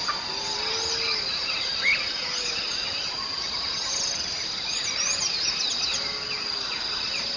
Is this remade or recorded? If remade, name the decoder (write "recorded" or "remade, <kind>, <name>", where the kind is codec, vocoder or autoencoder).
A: recorded